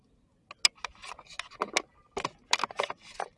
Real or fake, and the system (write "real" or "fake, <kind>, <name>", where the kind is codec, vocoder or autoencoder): real